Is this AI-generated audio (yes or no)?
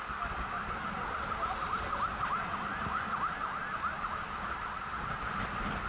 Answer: no